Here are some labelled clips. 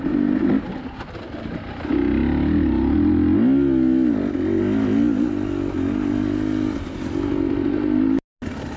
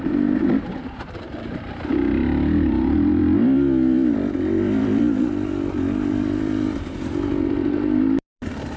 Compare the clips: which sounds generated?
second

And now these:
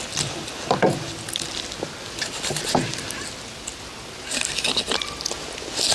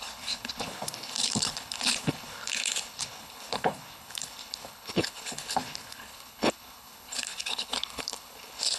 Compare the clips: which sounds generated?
second